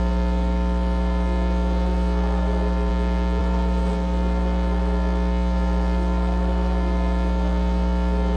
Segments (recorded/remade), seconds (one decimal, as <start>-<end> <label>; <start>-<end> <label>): 0.0-2.9 remade; 2.9-3.4 recorded; 3.4-8.4 remade